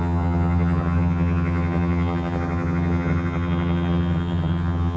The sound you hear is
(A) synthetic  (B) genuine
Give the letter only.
A